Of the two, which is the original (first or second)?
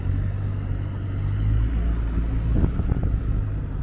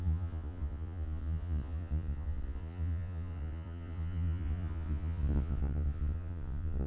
first